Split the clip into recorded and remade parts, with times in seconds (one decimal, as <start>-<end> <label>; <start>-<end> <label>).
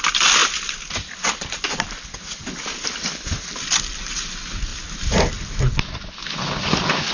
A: 0.0-7.1 recorded